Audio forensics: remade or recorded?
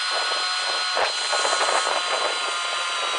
recorded